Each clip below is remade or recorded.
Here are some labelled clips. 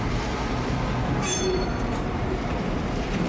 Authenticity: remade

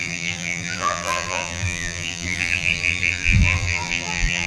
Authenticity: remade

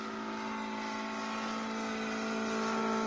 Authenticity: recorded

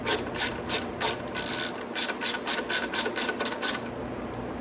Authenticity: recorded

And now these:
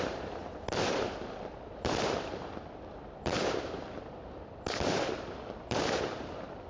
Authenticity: remade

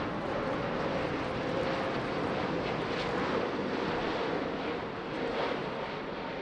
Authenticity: recorded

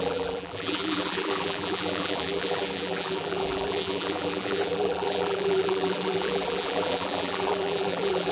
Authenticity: remade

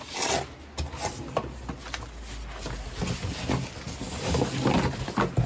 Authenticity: recorded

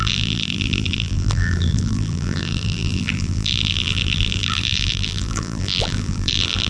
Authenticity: remade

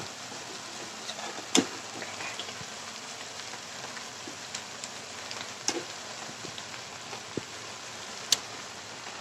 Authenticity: recorded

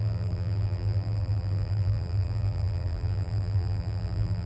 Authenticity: remade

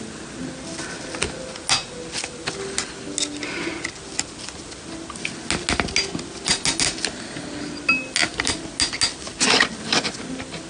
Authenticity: recorded